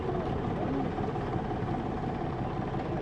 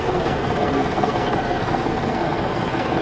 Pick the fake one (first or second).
second